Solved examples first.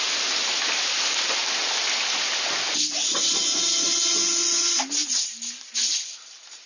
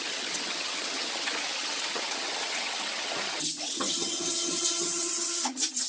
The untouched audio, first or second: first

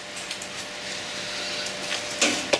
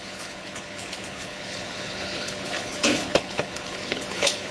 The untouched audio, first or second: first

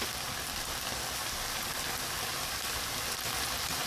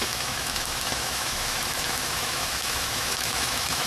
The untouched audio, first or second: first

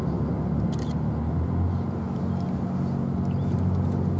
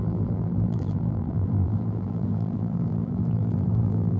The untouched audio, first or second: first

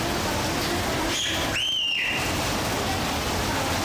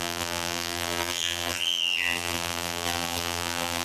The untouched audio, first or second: first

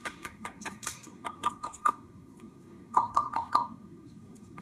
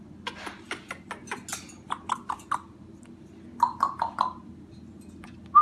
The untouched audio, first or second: second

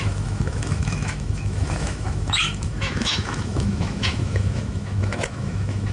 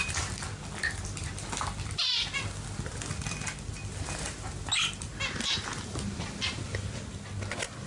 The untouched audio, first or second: second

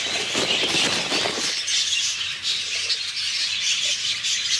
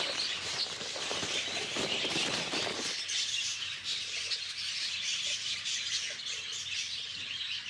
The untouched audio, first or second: first